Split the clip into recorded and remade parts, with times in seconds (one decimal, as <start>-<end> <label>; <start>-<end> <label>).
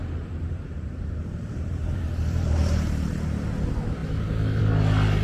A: 0.0-3.1 remade; 3.1-5.2 recorded